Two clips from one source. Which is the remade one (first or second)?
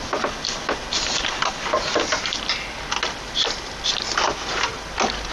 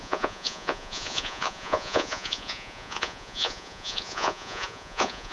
second